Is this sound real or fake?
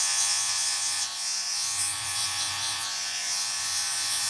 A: fake